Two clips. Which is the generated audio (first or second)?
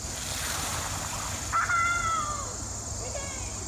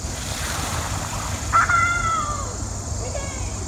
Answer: second